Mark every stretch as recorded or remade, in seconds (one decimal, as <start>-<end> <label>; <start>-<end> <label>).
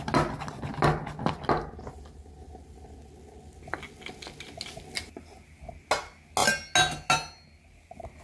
0.0-8.2 recorded